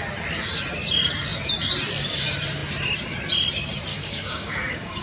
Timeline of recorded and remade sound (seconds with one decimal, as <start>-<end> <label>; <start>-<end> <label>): 0.0-3.9 recorded; 3.9-5.0 remade